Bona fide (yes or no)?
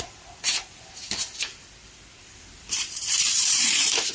no